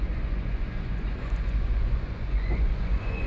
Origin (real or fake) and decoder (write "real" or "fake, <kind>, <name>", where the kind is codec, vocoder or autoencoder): fake, vocoder, Vocos